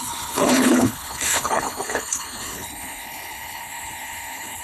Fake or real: fake